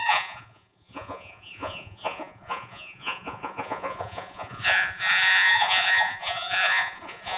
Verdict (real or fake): fake